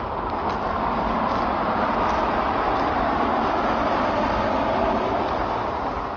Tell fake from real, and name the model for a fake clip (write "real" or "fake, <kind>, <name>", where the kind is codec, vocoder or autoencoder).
real